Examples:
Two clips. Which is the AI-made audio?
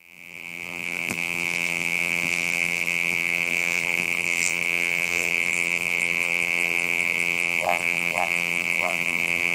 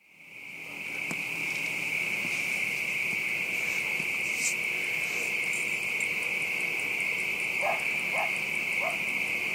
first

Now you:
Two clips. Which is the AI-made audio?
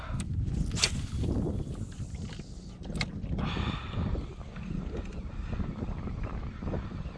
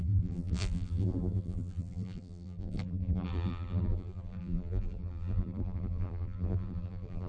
second